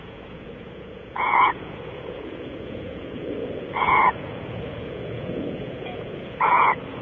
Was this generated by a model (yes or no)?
yes